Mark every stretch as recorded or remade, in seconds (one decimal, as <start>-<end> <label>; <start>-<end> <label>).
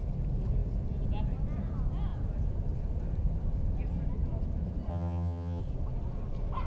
0.0-4.9 recorded; 4.9-5.6 remade; 5.6-6.7 recorded